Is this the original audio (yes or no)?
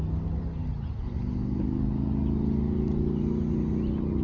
yes